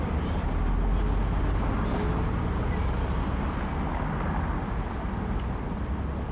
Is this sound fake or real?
real